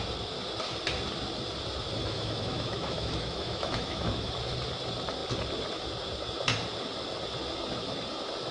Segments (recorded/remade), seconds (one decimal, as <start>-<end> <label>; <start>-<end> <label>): 0.0-2.0 recorded; 2.0-4.3 remade; 4.3-8.5 recorded